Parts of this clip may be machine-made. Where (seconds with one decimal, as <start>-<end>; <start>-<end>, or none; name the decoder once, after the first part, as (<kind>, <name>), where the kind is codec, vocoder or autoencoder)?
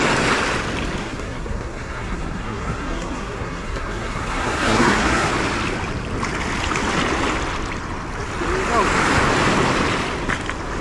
1.0-5.3 (codec, SNAC)